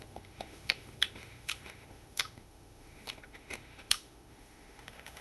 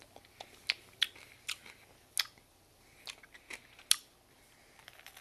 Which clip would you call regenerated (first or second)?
first